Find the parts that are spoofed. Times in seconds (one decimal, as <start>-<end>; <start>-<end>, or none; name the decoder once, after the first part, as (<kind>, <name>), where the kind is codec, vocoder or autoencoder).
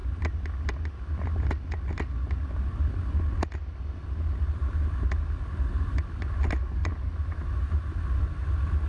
6.8-7.5 (vocoder, BigVGAN v2)